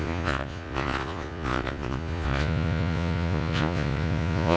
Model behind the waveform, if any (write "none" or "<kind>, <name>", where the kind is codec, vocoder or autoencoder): vocoder, Vocos